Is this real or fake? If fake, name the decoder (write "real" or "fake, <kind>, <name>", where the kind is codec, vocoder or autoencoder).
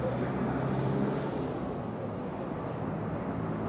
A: real